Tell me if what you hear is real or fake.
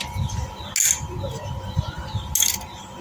real